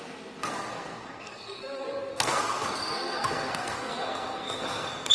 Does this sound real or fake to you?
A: fake